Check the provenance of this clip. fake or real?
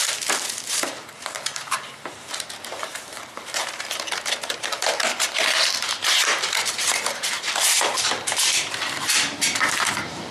fake